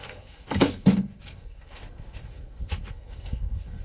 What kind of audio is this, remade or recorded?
remade